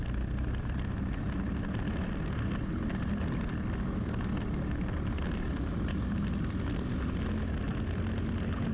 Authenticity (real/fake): real